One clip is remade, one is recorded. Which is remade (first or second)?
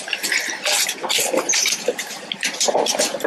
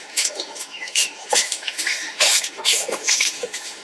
second